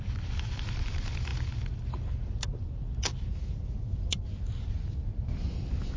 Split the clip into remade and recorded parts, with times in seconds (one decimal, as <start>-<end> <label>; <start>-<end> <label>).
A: 0.0-6.0 recorded